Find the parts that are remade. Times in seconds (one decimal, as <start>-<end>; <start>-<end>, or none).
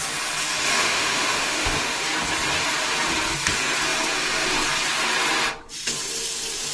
0.8-2.0